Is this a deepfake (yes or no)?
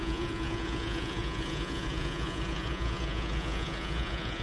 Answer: yes